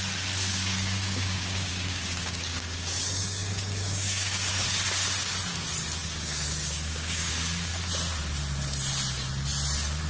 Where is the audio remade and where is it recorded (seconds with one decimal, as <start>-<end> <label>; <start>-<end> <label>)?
0.0-0.5 recorded; 0.5-4.5 remade; 4.5-6.0 recorded; 6.0-7.3 remade; 7.3-10.1 recorded